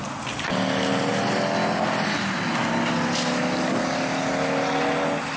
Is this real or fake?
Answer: real